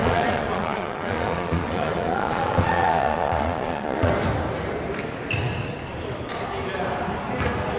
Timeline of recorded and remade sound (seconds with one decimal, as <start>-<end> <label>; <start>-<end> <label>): 0.0-4.1 remade; 4.1-7.8 recorded